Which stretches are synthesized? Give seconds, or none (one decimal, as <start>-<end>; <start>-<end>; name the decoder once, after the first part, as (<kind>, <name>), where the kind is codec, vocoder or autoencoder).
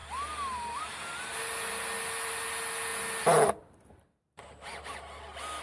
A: none